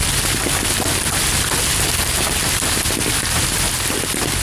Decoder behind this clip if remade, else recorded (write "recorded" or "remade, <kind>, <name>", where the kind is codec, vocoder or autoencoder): recorded